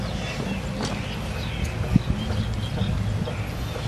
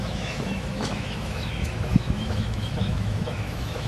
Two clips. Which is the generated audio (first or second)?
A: second